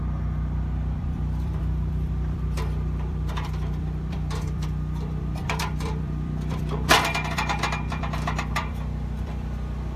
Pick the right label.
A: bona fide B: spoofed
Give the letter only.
B